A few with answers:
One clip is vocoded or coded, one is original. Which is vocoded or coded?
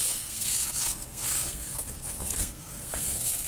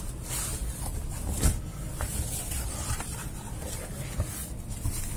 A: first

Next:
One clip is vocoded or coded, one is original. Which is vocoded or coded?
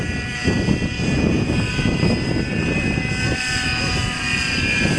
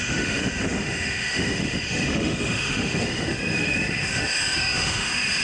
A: second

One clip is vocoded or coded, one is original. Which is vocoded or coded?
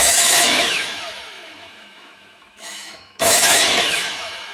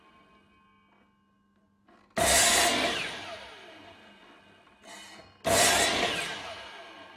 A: first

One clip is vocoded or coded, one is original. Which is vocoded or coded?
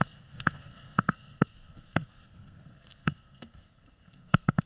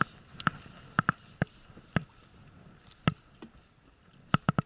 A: first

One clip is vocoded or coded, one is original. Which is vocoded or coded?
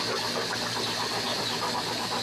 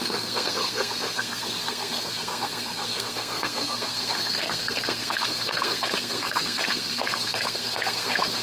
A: second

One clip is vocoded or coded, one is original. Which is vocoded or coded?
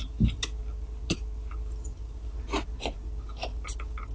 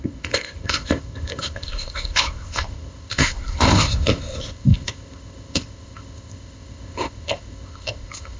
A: second